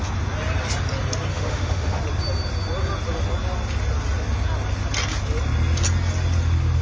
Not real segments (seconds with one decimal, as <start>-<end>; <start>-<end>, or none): 1.3-2.0